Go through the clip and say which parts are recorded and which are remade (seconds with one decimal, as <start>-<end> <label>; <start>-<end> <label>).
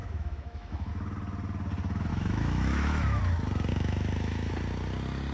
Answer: 0.0-0.9 remade; 0.9-2.1 recorded; 2.1-3.2 remade; 3.2-3.7 recorded; 3.7-4.5 remade; 4.5-5.3 recorded